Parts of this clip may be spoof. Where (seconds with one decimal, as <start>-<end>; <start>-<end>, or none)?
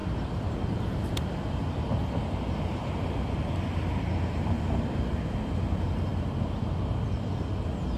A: none